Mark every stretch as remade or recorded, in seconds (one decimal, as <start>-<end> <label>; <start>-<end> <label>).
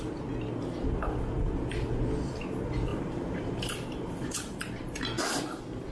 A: 0.0-2.9 recorded; 2.9-5.2 remade; 5.2-5.9 recorded